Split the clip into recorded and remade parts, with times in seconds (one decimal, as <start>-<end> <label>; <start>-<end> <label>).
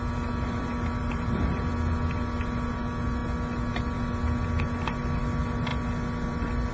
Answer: 0.0-1.0 recorded; 1.0-1.6 remade; 1.6-6.7 recorded